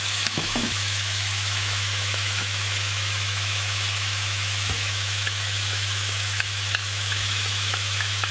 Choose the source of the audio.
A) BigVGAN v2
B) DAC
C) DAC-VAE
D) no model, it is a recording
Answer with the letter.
C